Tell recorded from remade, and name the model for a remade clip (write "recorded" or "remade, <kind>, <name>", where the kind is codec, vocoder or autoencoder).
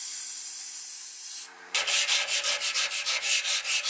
remade, vocoder, BigVGAN v2